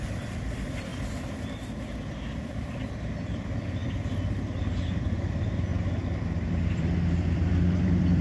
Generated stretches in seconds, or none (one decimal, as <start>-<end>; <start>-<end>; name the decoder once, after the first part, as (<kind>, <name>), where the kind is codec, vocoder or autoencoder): 0.0-0.9 (vocoder, BigVGAN v2); 2.1-5.7; 6.5-8.2